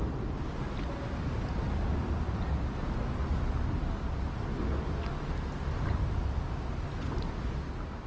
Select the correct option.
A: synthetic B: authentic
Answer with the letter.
B